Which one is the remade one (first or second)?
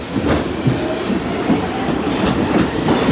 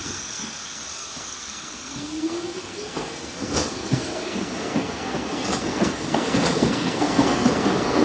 second